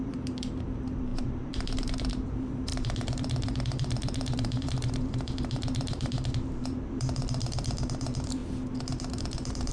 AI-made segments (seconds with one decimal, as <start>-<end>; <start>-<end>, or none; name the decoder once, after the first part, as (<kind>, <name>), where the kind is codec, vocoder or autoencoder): 0.0-8.4 (vocoder, BigVGAN v2); 9.1-9.7